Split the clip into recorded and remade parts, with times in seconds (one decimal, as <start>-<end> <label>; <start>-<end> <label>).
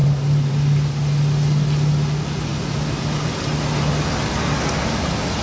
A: 0.0-5.4 recorded